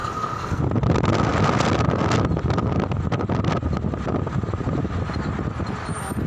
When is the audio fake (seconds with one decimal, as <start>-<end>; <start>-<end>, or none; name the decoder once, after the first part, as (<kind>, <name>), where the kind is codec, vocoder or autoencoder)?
0.0-0.6 (codec, SNAC)